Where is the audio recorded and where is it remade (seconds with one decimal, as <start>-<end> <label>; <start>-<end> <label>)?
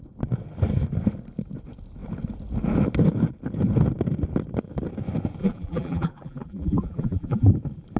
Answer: 0.0-5.4 recorded; 5.4-7.5 remade; 7.5-8.0 recorded